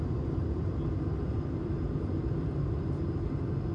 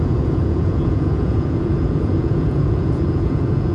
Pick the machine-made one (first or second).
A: second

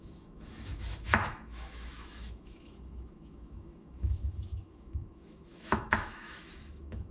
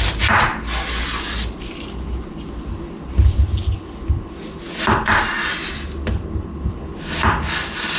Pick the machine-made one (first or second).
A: first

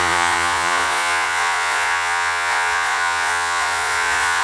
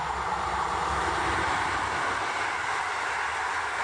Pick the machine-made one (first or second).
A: first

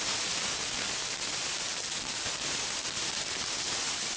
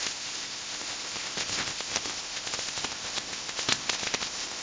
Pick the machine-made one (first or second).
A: second